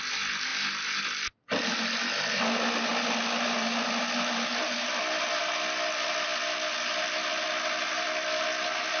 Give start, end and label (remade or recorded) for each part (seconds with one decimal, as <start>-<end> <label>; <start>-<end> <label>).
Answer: 0.0-9.0 recorded